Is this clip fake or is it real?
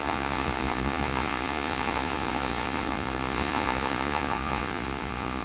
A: fake